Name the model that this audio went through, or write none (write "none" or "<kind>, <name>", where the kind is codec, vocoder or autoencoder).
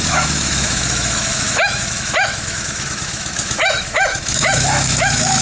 autoencoder, DAC-VAE